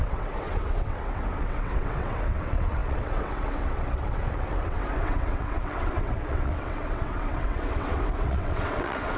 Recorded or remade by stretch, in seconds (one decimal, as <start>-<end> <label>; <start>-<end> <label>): 0.0-9.2 remade